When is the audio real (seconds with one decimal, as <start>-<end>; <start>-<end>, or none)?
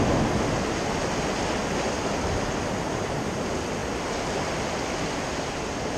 0.0-6.0